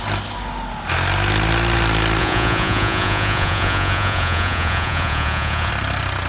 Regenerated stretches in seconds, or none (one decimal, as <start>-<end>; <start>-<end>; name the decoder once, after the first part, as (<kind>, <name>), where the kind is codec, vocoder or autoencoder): 2.2-5.7 (vocoder, Vocos)